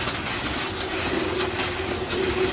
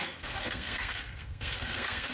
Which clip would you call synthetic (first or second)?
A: second